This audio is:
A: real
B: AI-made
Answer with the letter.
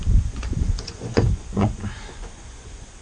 B